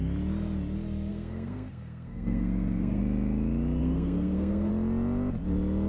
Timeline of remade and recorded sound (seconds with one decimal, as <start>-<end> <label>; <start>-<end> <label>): 0.0-1.1 recorded; 1.1-3.0 remade; 3.0-3.8 recorded; 3.8-4.7 remade; 4.7-5.9 recorded